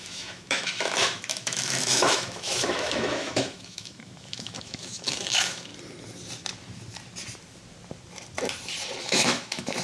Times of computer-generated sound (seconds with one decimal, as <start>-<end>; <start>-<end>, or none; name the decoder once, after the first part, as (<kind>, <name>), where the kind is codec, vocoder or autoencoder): 0.0-5.7 (autoencoder, DAC-VAE); 9.0-9.8